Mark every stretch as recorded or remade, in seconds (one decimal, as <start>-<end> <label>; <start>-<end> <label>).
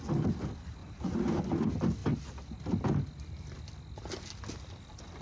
0.0-0.8 recorded; 0.8-1.4 remade; 1.4-5.2 recorded